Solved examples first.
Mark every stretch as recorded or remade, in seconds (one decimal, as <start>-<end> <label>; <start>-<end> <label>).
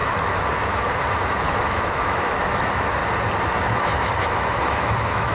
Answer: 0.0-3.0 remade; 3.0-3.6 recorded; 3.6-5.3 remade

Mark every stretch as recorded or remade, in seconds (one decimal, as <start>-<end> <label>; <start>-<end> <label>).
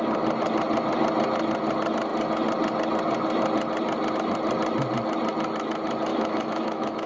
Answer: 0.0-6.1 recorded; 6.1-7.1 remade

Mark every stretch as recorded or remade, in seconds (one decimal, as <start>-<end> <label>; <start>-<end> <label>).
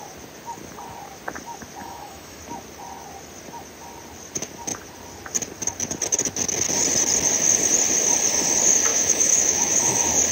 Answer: 0.0-1.8 recorded; 1.8-2.4 remade; 2.4-8.9 recorded; 8.9-9.8 remade; 9.8-10.3 recorded